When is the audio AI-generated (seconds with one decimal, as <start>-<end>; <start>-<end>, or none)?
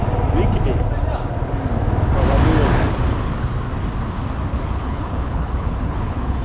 4.5-6.4